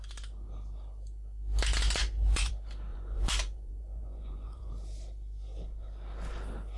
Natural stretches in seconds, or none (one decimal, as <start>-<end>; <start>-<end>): 0.0-2.0; 2.5-2.9; 4.7-6.8